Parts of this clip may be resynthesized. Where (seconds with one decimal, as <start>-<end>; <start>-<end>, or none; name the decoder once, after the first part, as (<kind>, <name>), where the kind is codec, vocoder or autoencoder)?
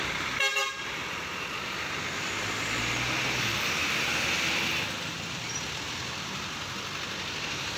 0.6-1.5 (vocoder, BigVGAN v2)